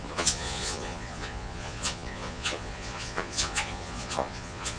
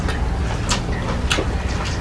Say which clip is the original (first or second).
second